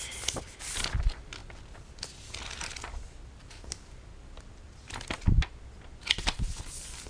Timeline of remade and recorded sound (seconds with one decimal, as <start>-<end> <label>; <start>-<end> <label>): 0.0-7.1 recorded

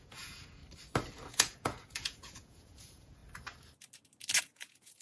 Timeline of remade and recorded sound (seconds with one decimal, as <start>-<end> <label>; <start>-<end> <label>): 0.0-0.6 remade; 0.6-1.3 recorded; 1.3-3.2 remade; 3.2-4.4 recorded; 4.4-5.0 remade